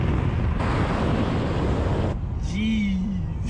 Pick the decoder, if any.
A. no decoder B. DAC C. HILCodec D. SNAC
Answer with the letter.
A